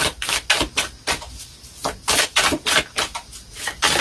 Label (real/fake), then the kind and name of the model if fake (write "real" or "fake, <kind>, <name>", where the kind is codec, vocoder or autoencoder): real